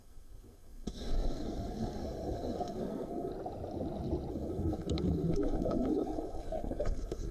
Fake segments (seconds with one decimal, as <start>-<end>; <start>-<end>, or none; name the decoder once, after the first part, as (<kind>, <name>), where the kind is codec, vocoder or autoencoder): 0.0-3.3 (codec, SNAC); 4.3-7.3